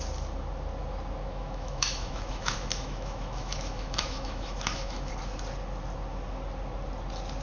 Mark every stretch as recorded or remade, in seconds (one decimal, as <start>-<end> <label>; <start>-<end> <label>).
0.0-1.3 recorded; 1.3-5.1 remade; 5.1-7.4 recorded